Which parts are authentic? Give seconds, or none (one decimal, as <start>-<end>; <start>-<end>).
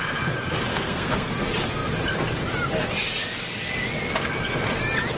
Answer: 0.0-0.7; 1.3-5.2